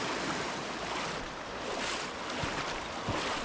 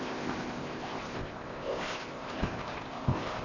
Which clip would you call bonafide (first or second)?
first